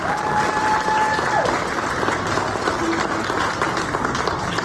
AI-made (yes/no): no